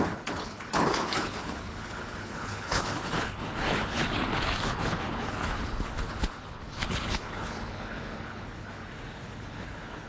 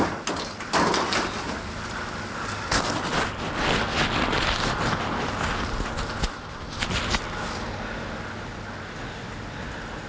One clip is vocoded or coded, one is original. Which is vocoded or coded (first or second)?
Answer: first